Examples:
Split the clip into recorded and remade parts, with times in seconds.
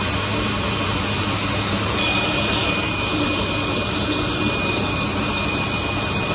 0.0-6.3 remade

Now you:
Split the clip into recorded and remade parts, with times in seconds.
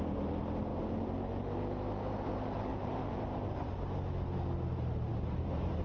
0.0-0.7 recorded; 0.7-1.3 remade; 1.3-2.7 recorded; 2.7-3.7 remade; 3.7-5.1 recorded; 5.1-5.8 remade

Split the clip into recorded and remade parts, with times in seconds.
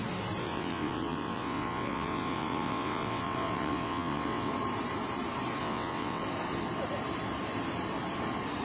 0.0-0.4 recorded; 0.4-4.5 remade; 4.5-5.6 recorded; 5.6-6.2 remade; 6.2-8.6 recorded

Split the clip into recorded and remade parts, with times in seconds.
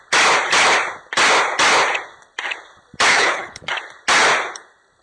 0.0-3.1 recorded; 3.1-3.7 remade; 3.7-5.0 recorded